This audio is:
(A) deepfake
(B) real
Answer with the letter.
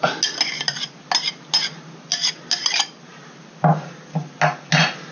B